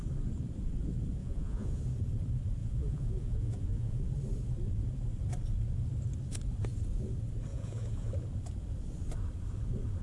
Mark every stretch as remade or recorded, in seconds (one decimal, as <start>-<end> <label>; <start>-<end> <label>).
0.0-1.2 recorded; 1.2-1.8 remade; 1.8-2.6 recorded; 2.6-4.0 remade; 4.0-7.5 recorded; 7.5-8.1 remade; 8.1-10.0 recorded